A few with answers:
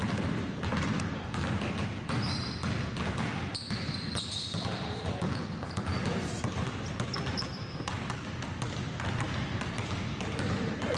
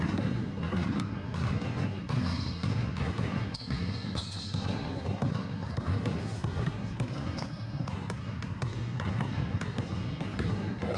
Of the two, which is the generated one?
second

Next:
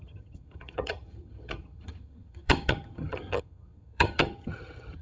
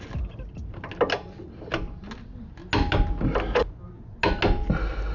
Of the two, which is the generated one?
first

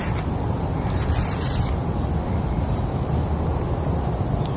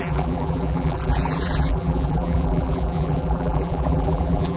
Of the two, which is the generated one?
second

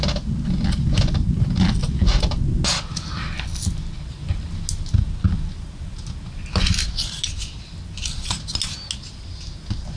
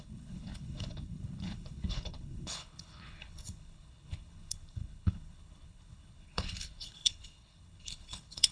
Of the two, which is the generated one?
second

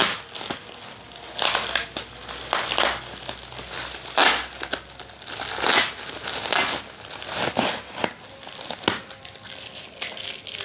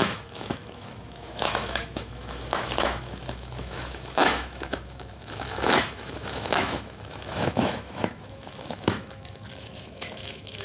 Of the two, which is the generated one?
second